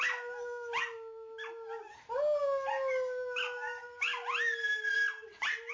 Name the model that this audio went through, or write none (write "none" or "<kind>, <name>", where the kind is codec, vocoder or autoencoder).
none